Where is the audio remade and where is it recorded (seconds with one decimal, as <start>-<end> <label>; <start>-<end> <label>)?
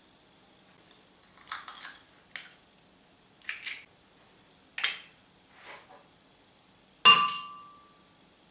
0.0-8.5 recorded